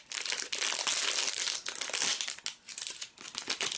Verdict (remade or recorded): recorded